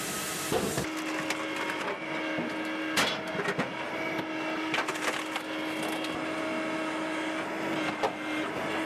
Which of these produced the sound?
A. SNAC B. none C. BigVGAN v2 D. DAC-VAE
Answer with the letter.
B